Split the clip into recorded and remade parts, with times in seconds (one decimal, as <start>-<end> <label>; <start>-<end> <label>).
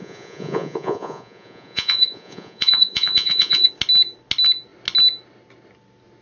0.0-3.7 remade; 3.7-6.2 recorded